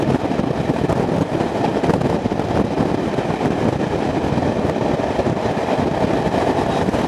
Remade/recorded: recorded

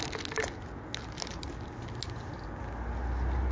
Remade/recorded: recorded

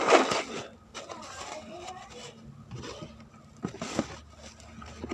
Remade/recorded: recorded